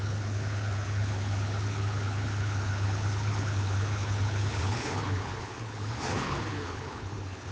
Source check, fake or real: fake